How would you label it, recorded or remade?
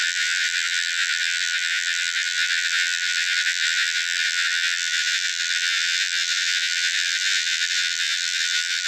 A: remade